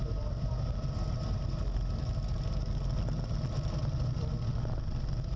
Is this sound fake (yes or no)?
no